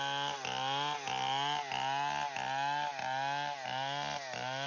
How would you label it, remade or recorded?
recorded